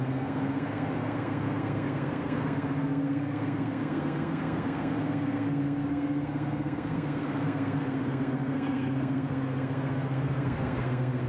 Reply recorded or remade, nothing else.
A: remade